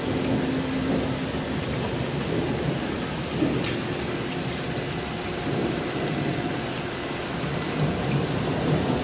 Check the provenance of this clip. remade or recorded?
recorded